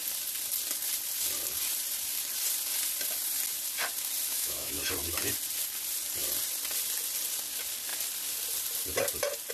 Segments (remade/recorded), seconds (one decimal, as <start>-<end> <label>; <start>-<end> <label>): 0.0-4.3 recorded; 4.3-4.8 remade; 4.8-9.5 recorded